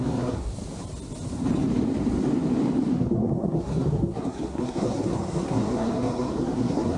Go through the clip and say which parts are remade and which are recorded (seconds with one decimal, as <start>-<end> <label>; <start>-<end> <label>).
0.0-0.5 remade; 0.5-2.9 recorded; 2.9-7.0 remade